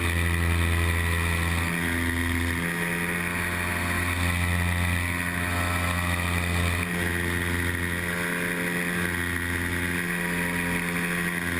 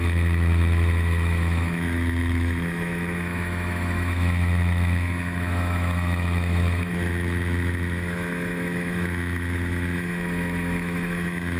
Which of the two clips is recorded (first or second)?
first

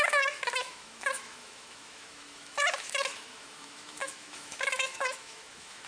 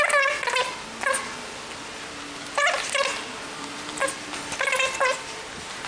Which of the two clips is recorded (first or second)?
second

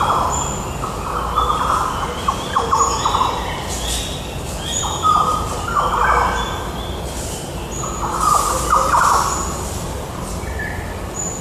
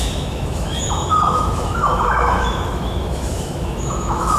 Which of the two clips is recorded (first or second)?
first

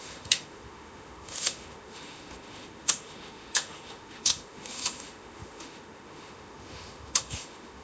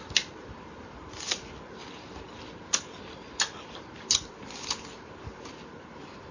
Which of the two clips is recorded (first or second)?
second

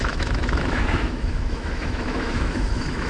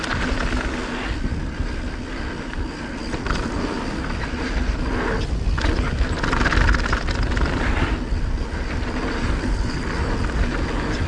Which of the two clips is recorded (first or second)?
second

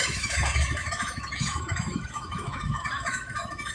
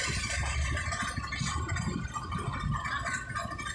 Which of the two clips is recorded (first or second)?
second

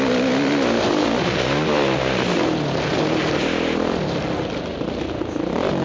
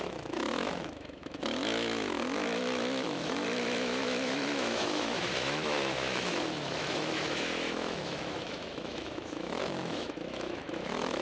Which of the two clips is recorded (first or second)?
first